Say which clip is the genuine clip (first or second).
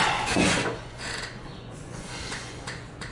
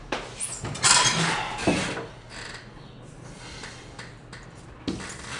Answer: second